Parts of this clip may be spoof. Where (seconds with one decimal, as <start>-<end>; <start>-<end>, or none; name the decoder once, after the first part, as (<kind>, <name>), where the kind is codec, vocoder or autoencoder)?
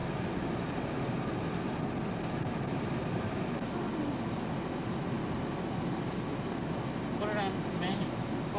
none